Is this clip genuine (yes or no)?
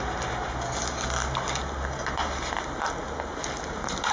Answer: yes